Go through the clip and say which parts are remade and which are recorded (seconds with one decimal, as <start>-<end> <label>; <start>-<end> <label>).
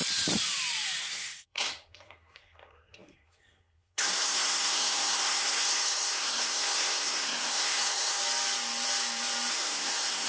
0.0-1.0 recorded; 1.0-8.2 remade; 8.2-9.5 recorded; 9.5-10.3 remade